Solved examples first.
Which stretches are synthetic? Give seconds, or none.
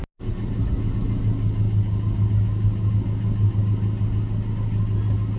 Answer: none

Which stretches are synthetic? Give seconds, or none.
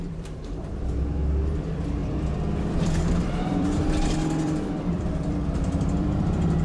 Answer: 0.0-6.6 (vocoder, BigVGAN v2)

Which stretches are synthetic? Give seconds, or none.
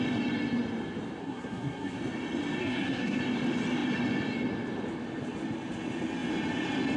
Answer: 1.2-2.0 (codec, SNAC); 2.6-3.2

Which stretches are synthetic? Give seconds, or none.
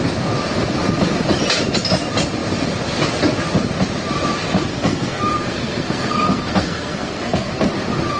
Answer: 4.7-7.7 (codec, SNAC)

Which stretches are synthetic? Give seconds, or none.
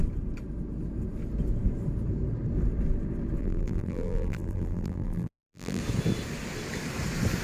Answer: 3.4-5.8 (vocoder, BigVGAN v2)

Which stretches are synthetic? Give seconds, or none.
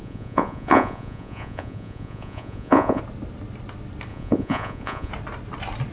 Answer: 0.0-3.0 (vocoder, Vocos); 4.1-5.1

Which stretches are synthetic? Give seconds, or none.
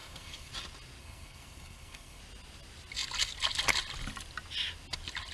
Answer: 0.0-0.5 (codec, SNAC); 1.0-2.2